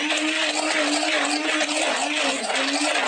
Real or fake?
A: real